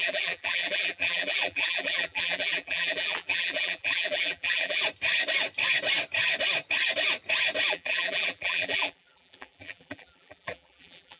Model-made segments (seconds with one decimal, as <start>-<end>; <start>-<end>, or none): 0.0-4.8; 7.7-11.2